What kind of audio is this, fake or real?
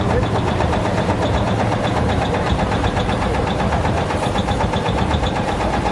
fake